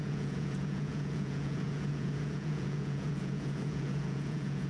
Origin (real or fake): fake